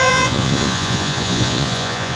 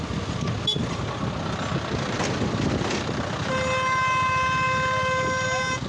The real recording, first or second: second